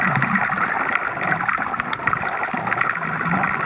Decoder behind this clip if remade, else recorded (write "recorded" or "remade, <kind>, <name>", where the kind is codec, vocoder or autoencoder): recorded